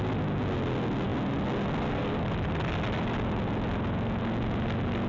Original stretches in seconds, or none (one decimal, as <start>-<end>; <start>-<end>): 0.0-5.1